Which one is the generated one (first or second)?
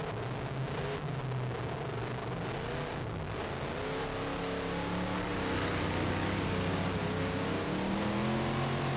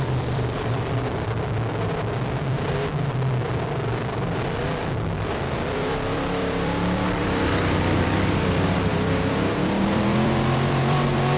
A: second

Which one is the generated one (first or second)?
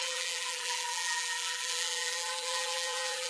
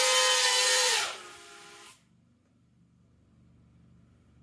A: first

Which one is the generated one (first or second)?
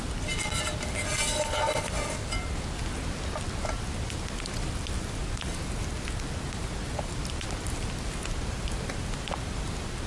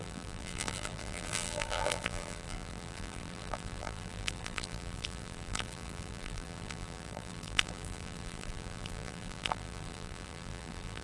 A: second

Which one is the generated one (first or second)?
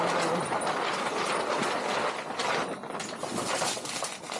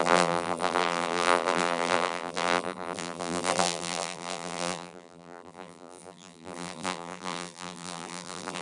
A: second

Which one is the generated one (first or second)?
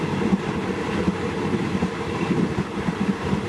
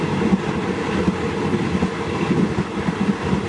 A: first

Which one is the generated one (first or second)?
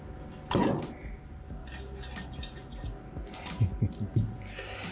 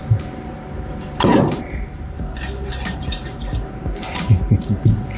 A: second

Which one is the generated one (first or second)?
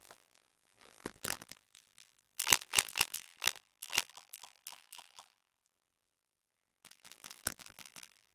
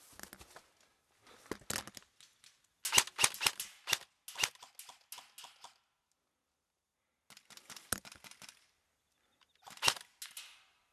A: first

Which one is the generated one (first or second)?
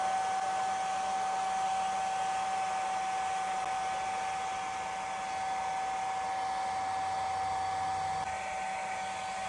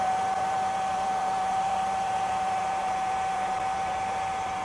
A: second